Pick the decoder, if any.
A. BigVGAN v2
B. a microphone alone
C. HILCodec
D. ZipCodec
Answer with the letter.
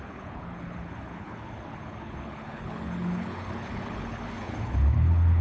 C